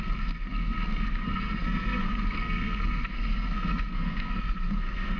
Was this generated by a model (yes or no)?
yes